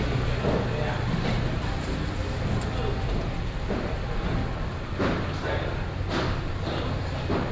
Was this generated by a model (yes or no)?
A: no